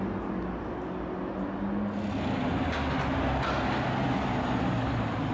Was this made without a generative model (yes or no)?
yes